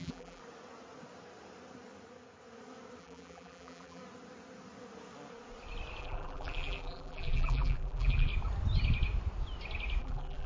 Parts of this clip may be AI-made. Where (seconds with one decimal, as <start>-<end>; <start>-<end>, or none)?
0.0-0.4; 3.0-4.0; 6.0-8.3; 10.0-10.5